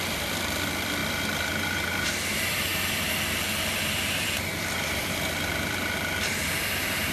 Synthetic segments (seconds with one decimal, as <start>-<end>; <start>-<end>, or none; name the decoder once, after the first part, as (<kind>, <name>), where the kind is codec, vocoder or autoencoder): 0.0-1.0 (vocoder, BigVGAN v2); 2.3-2.7; 3.3-7.1